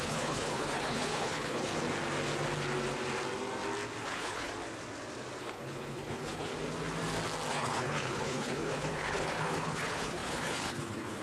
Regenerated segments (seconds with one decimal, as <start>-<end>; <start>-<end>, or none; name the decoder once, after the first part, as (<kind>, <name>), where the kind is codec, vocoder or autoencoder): 0.0-1.7 (codec, HILCodec); 4.0-4.5; 5.4-6.5; 7.5-11.2